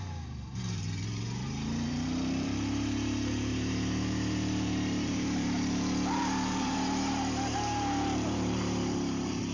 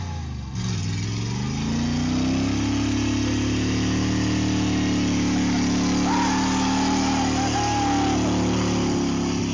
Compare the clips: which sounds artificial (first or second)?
first